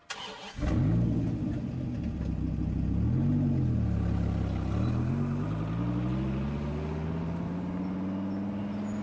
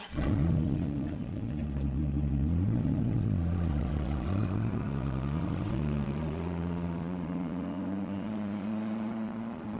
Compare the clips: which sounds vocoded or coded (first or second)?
second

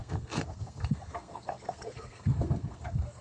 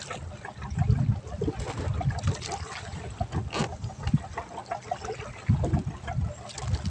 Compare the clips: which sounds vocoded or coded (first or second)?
first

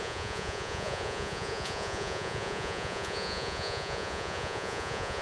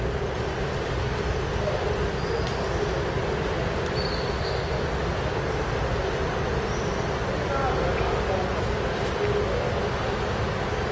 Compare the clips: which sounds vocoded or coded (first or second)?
first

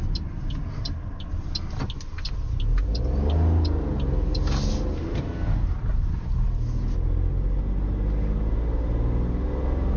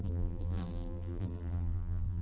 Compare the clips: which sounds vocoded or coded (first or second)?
second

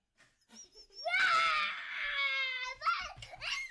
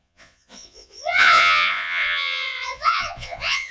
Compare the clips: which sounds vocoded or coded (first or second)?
second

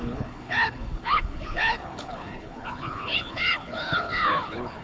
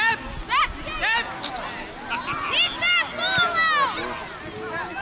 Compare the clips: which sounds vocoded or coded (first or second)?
first